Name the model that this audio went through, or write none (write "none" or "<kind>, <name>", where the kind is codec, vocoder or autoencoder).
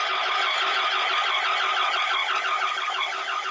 none